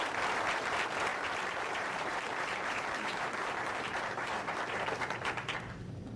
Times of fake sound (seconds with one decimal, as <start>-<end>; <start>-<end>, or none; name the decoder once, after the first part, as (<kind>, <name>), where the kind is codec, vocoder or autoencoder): 1.1-4.8 (vocoder, BigVGAN v2)